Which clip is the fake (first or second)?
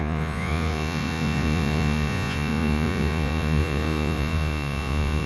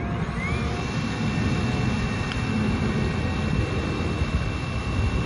first